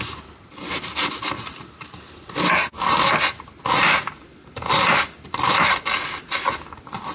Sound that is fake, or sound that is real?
real